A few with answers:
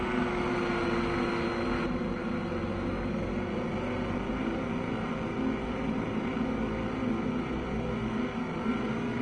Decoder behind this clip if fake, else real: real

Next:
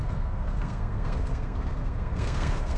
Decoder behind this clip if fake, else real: fake, codec, SNAC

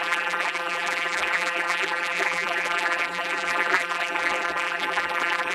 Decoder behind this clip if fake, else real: fake, vocoder, BigVGAN v2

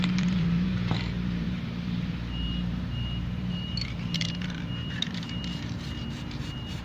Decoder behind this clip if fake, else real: fake, vocoder, BigVGAN v2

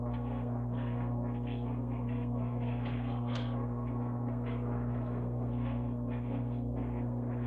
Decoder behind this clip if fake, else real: fake, codec, SNAC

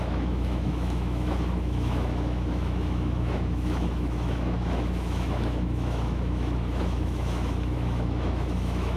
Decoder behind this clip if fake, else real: fake, autoencoder, DAC-VAE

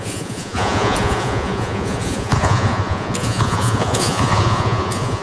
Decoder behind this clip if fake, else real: fake, vocoder, Vocos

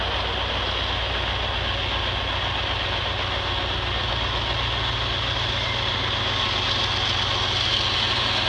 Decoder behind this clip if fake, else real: real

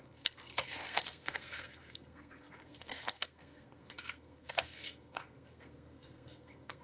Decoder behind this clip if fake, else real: fake, codec, SNAC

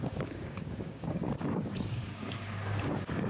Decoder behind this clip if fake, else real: fake, codec, DAC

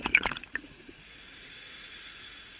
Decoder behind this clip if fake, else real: fake, vocoder, Vocos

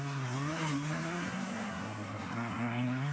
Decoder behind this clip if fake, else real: fake, codec, SNAC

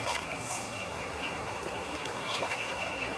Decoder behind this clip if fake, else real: fake, codec, SNAC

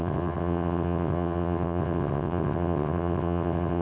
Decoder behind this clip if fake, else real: fake, vocoder, WaveNeXt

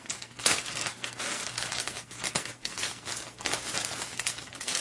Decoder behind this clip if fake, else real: fake, codec, SNAC